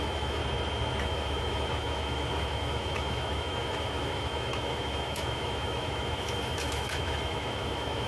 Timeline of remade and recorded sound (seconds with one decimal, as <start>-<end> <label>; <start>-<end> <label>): 0.0-0.4 remade; 0.4-1.0 recorded; 1.0-8.1 remade